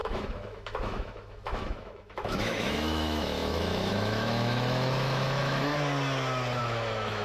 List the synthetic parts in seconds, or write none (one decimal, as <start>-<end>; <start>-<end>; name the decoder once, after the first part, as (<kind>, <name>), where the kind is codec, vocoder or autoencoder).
0.0-5.7 (autoencoder, DAC-VAE); 6.6-7.2